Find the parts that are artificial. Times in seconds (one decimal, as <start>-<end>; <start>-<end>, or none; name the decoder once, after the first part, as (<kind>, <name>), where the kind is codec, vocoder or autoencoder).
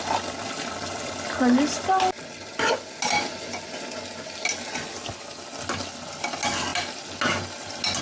none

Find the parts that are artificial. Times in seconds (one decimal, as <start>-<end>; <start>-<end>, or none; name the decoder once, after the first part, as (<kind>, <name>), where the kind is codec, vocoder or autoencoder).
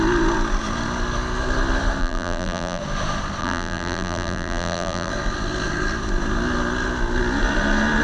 2.0-2.8 (vocoder, BigVGAN v2); 3.4-5.1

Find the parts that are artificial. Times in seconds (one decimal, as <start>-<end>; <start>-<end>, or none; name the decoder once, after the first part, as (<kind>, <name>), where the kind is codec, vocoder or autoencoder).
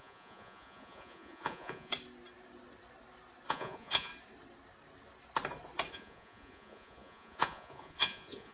0.0-1.9 (vocoder, Vocos); 3.5-4.1; 5.9-8.5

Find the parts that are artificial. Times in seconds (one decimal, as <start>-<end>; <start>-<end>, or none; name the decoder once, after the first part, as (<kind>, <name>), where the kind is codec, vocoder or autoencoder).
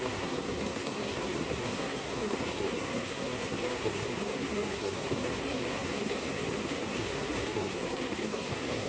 0.0-8.9 (codec, SNAC)